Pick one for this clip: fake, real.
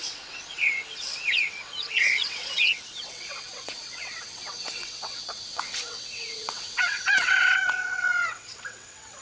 fake